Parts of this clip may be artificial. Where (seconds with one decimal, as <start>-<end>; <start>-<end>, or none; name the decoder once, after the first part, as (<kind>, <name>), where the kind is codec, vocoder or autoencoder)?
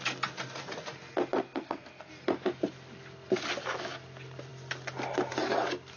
1.4-2.1 (codec, SNAC)